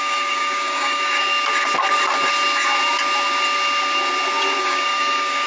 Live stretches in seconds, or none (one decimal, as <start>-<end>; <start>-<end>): 1.3-4.6